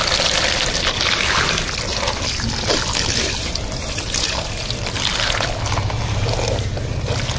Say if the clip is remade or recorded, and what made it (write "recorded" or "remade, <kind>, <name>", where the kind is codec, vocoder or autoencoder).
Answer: recorded